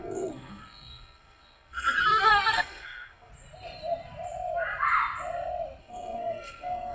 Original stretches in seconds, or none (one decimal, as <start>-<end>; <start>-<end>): 3.3-5.8